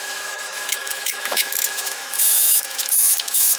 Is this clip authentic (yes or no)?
no